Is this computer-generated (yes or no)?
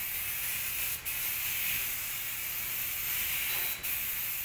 no